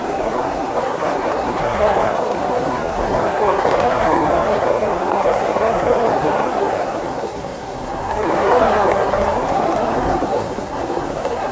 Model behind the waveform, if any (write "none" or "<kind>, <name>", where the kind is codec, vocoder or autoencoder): codec, SNAC